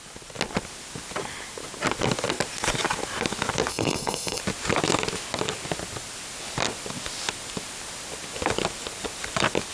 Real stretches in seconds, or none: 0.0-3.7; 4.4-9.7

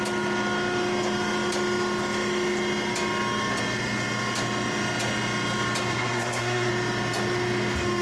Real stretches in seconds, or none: 0.0-5.9; 6.7-8.0

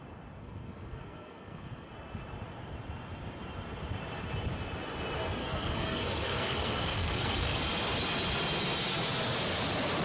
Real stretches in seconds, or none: 0.0-0.4; 1.9-5.4; 7.6-10.0

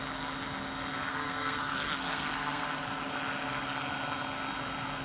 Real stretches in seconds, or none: 0.0-1.1; 2.7-5.0

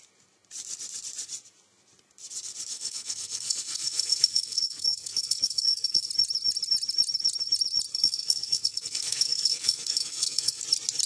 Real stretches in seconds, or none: 0.0-2.7; 6.1-7.9; 10.6-11.1

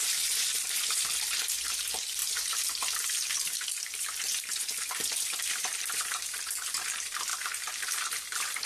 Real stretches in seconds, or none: 0.0-8.7

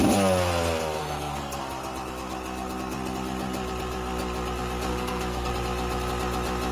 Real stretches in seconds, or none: 0.0-1.0; 1.6-4.9; 5.5-6.7

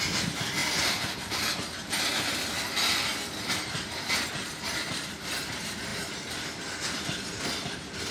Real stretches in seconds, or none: 0.0-8.1